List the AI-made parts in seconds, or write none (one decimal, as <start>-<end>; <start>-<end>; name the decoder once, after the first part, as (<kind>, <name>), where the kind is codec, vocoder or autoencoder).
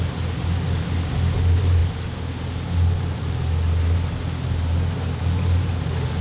none